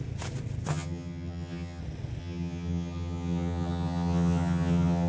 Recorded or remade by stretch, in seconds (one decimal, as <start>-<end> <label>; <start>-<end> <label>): 0.0-0.7 recorded; 0.7-1.8 remade; 1.8-2.2 recorded; 2.2-5.1 remade